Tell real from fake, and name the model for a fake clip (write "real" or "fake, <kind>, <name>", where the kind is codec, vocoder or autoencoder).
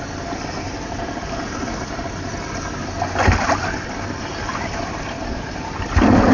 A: real